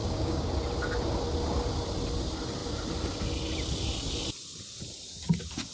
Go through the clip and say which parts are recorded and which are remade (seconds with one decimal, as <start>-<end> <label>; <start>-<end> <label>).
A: 0.0-0.5 remade; 0.5-5.7 recorded